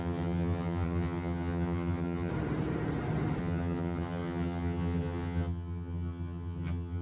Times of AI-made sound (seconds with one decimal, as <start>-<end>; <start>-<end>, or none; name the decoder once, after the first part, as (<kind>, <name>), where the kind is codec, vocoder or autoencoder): 0.0-2.3 (vocoder, HiFi-GAN); 3.4-7.0

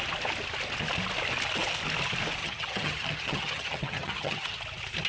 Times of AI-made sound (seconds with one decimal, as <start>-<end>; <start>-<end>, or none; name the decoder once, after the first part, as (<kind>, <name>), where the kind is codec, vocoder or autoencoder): 2.4-4.6 (vocoder, HiFi-GAN)

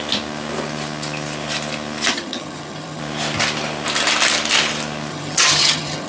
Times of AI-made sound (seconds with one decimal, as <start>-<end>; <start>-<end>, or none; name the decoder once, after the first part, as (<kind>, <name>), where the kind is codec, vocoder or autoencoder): 2.1-3.0 (vocoder, HiFi-GAN); 5.1-6.1

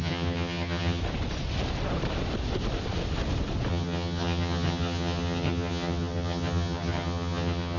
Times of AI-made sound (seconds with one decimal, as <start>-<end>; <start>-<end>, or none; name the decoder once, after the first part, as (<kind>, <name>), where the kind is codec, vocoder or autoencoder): 0.0-1.0 (vocoder, HiFi-GAN); 3.7-7.8

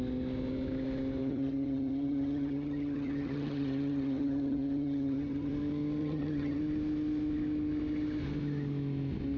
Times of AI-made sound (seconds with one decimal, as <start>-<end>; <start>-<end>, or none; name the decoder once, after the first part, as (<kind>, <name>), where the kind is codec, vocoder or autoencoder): 1.2-5.5 (vocoder, HiFi-GAN); 6.0-6.6

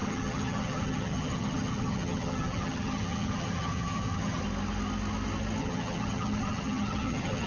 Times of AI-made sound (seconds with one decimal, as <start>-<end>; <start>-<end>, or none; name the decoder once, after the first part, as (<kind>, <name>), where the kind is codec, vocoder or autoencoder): 0.0-4.4 (vocoder, HiFi-GAN); 5.6-7.5

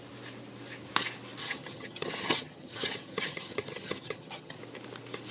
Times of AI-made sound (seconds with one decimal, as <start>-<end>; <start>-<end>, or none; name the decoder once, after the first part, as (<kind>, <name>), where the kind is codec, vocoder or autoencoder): 1.4-4.6 (vocoder, HiFi-GAN)